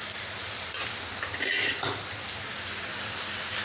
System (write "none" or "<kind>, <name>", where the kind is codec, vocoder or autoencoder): none